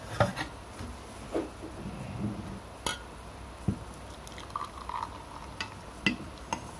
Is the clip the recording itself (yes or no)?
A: yes